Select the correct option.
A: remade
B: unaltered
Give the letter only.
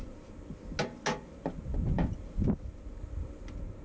B